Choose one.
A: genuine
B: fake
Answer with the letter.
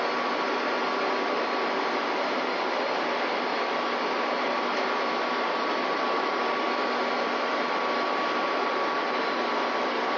A